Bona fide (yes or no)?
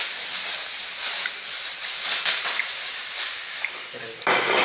yes